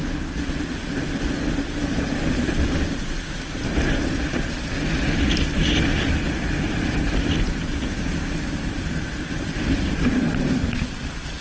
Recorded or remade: recorded